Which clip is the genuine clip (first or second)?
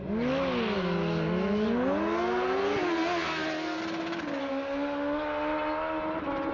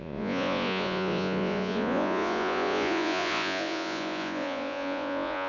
first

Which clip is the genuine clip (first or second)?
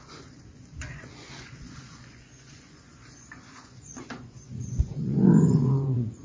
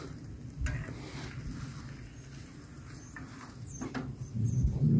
second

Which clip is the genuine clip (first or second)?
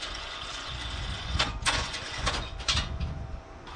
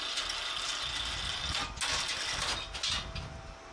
second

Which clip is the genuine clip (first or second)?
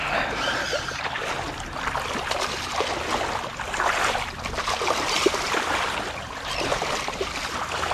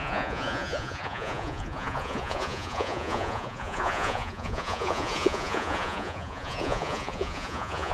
first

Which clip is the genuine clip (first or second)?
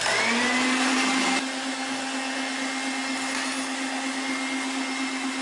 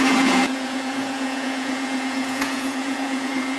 first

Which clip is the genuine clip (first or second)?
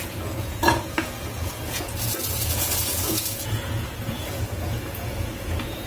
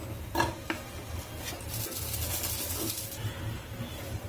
second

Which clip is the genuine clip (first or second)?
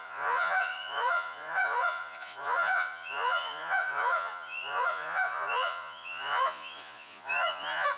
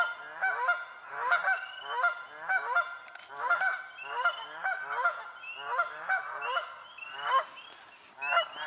second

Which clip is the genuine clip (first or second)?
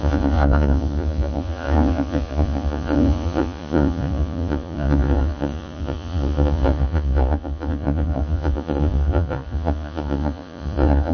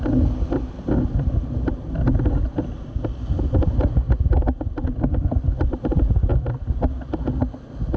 second